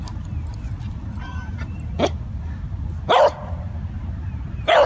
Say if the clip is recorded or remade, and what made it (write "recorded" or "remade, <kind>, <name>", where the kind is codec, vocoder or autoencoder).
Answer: recorded